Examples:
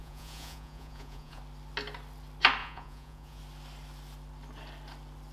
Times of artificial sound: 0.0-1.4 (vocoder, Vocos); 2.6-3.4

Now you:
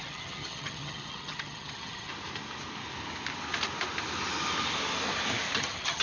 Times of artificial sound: 0.0-2.1 (vocoder, HiFi-GAN); 5.6-6.0

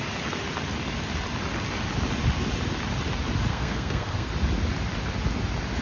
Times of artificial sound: 3.5-4.3 (codec, SNAC)

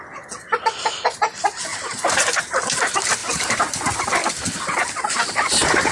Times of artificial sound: 1.7-2.4 (vocoder, BigVGAN v2); 3.2-3.7

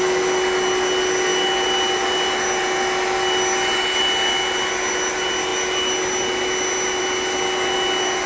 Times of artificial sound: none